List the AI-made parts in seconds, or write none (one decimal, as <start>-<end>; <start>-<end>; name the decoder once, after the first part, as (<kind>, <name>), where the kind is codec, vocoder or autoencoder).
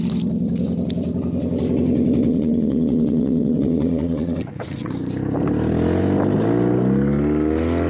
2.3-4.9 (vocoder, WaveNeXt)